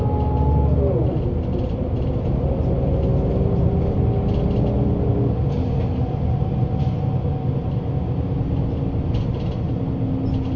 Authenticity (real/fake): real